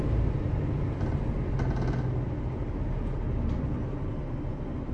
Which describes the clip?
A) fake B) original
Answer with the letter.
B